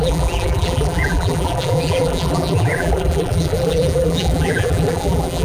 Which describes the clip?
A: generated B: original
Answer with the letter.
A